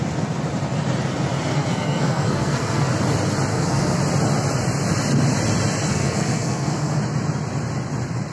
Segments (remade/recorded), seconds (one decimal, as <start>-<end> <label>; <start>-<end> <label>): 0.0-1.5 recorded; 1.5-2.9 remade; 2.9-3.5 recorded; 3.5-4.0 remade; 4.0-5.9 recorded; 5.9-7.0 remade; 7.0-8.3 recorded